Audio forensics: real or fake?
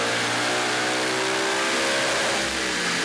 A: real